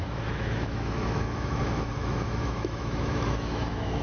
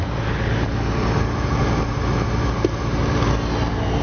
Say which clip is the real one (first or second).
second